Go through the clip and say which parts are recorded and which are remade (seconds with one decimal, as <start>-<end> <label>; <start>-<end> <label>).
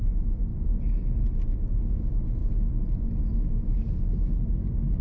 0.0-0.5 recorded; 0.5-1.2 remade; 1.2-5.0 recorded